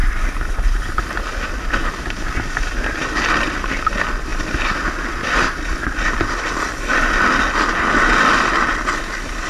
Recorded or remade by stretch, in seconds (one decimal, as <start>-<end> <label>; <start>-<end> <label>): 0.0-9.5 recorded

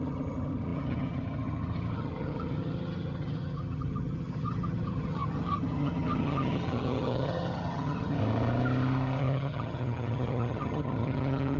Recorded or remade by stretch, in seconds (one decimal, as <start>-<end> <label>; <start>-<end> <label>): 0.0-8.2 remade; 8.2-9.2 recorded; 9.2-11.6 remade

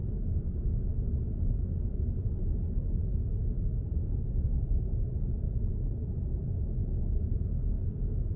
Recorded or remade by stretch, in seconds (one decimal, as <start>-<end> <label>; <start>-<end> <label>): 0.0-8.4 recorded